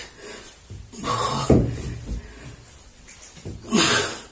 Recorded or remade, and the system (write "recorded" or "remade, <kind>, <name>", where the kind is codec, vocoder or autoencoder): recorded